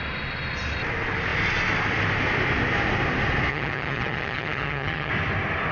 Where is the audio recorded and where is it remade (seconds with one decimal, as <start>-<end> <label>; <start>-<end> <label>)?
0.0-3.5 recorded; 3.5-5.1 remade; 5.1-5.7 recorded